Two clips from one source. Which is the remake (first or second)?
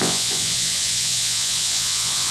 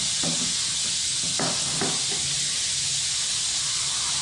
first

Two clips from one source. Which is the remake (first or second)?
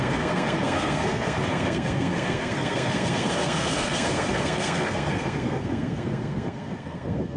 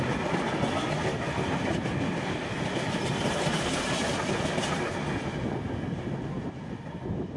first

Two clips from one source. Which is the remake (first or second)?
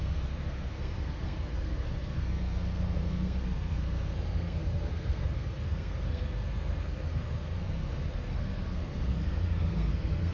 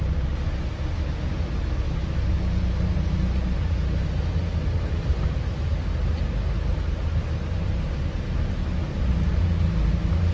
first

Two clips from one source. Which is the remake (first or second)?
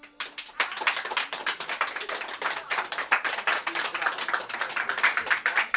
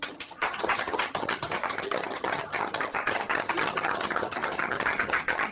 second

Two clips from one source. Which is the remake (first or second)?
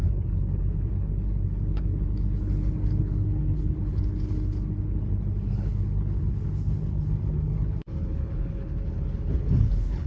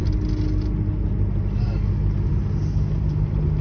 first